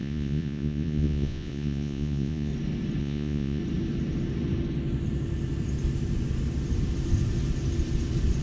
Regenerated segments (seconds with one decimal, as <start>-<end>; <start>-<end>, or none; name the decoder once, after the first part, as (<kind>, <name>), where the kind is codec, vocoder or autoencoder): 0.0-2.5 (vocoder, Vocos); 3.0-3.6

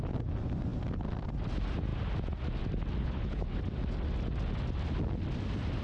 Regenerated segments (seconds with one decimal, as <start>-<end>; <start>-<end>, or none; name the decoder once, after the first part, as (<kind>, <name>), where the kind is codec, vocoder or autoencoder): 3.0-3.6 (codec, HILCodec)

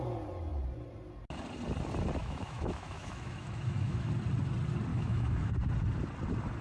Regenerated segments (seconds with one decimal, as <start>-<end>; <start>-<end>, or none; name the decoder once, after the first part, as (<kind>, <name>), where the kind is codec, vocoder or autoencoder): 2.2-4.1 (autoencoder, DAC-VAE); 4.9-5.5